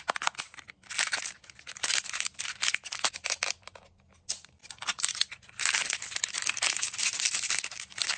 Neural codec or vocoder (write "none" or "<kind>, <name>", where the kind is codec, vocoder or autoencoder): none